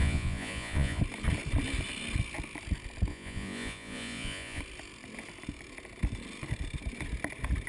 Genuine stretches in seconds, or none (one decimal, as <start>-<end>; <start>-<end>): 1.0-3.1; 4.6-7.7